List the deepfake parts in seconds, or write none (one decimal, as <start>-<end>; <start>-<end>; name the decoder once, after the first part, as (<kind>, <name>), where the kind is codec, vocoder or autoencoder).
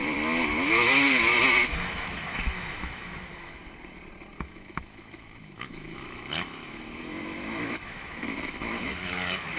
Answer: 0.5-1.3 (autoencoder, DAC-VAE); 1.9-3.6; 4.4-9.6